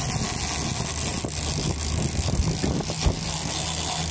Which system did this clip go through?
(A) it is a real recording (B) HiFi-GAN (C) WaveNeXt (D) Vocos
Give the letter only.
A